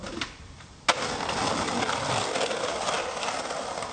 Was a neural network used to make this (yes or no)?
no